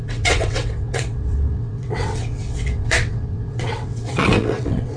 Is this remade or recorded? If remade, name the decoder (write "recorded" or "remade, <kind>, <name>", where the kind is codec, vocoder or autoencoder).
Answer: remade, vocoder, WaveNeXt